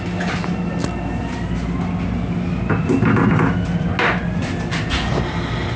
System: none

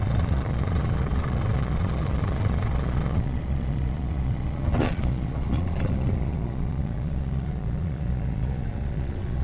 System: vocoder, Vocos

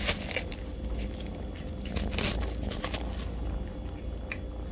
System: none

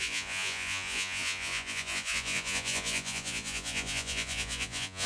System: vocoder, Vocos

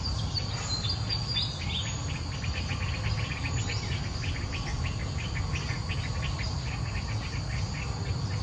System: none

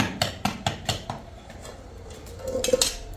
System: none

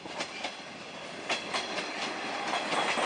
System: none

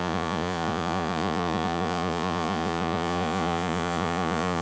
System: vocoder, Vocos